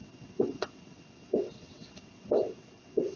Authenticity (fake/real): fake